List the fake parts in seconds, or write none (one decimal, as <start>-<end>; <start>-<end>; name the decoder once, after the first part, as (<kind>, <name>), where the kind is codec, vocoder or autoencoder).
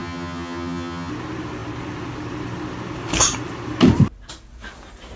0.0-1.1 (vocoder, HiFi-GAN)